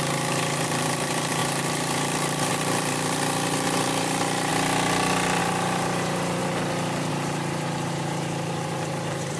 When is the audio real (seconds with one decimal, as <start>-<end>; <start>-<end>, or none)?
4.5-5.4; 6.4-7.1